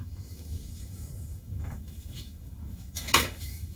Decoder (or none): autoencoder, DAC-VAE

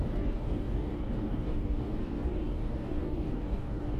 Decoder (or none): codec, DAC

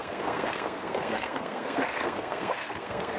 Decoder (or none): codec, SNAC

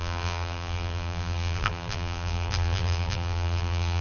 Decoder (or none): vocoder, BigVGAN v2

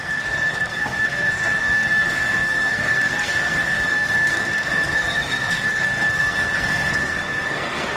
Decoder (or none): codec, SNAC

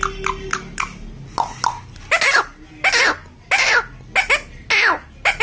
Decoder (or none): none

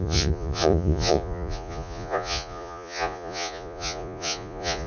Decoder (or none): vocoder, Vocos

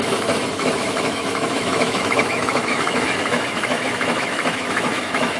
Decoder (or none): autoencoder, DAC-VAE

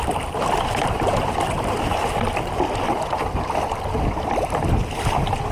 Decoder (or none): none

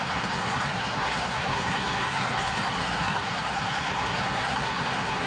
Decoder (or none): codec, SNAC